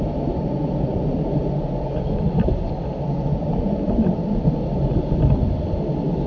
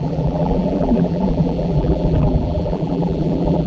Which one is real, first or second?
first